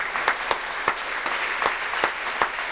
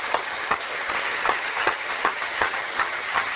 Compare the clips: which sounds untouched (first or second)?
first